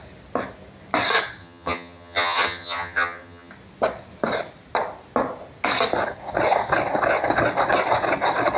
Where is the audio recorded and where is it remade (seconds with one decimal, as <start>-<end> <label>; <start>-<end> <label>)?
0.0-1.4 recorded; 1.4-3.5 remade; 3.5-8.6 recorded

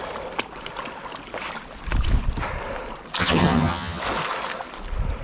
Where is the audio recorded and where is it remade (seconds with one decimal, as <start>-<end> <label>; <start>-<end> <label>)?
0.0-3.2 recorded; 3.2-4.0 remade; 4.0-5.2 recorded

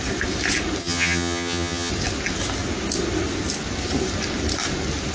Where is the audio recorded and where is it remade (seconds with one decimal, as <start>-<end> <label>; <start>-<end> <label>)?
0.0-0.8 recorded; 0.8-1.9 remade; 1.9-5.1 recorded

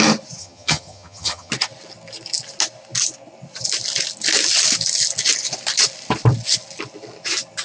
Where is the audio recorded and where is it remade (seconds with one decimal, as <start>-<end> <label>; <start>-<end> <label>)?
0.0-0.4 recorded; 0.4-1.5 remade; 1.5-7.6 recorded

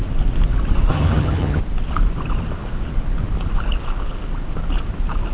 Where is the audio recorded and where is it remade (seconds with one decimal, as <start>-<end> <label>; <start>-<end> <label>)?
0.0-0.9 recorded; 0.9-1.6 remade; 1.6-5.3 recorded

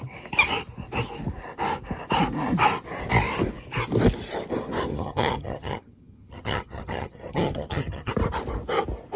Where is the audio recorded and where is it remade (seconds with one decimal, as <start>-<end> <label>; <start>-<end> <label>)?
0.0-4.9 recorded; 4.9-8.1 remade; 8.1-9.2 recorded

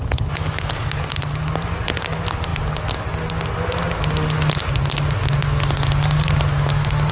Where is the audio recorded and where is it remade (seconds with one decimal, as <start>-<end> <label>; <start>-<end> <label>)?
0.0-7.1 recorded